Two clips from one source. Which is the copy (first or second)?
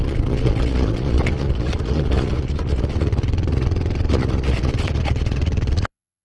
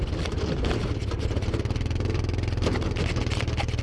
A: first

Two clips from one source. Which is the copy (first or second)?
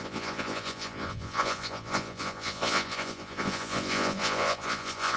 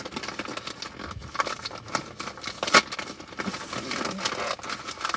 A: first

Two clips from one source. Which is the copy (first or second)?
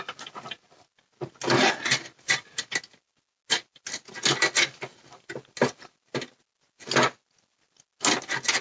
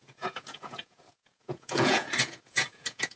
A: second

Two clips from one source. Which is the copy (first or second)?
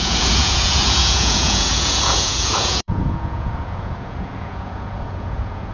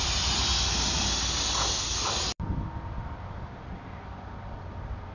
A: first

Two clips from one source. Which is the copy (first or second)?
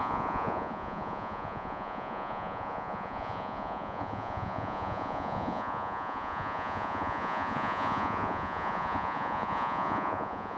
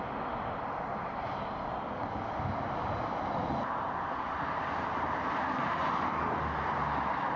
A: first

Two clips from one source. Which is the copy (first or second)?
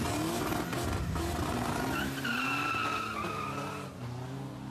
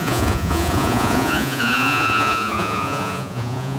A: second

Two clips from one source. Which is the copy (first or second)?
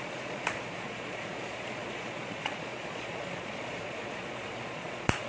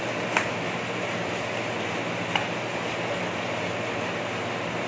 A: first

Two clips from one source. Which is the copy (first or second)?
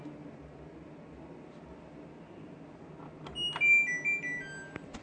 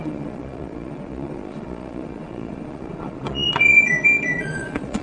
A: second